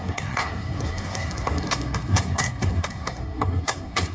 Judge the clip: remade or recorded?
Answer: remade